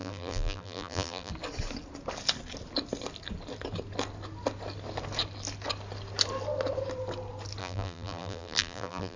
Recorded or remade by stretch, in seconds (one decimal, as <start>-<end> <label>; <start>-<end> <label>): 0.0-1.3 remade; 1.3-7.6 recorded; 7.6-9.2 remade

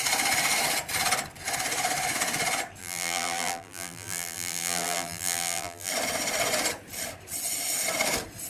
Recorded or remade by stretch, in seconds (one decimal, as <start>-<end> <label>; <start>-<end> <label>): 0.0-2.8 recorded; 2.8-5.9 remade; 5.9-8.5 recorded

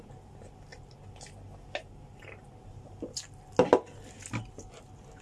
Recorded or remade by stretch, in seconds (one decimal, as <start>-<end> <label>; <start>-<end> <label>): 0.0-5.2 recorded

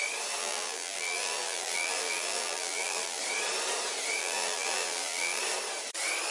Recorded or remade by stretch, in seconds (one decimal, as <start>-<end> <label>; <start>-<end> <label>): 0.0-0.4 recorded; 0.4-3.2 remade; 3.2-4.2 recorded; 4.2-5.4 remade; 5.4-6.3 recorded